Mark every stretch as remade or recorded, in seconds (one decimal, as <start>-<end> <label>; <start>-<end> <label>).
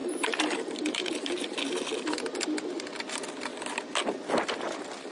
0.0-1.6 remade; 1.6-5.1 recorded